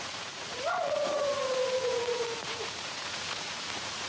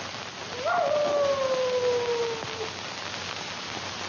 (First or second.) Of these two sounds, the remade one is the first